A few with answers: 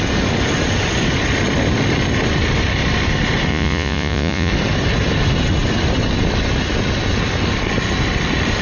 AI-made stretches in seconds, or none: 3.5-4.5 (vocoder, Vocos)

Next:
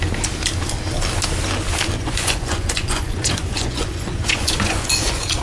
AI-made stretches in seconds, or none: 2.0-5.4 (vocoder, Vocos)

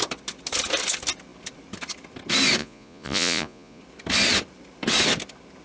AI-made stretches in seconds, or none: 2.6-3.8 (vocoder, Vocos)